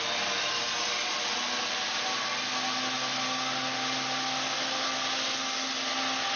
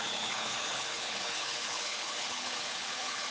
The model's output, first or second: second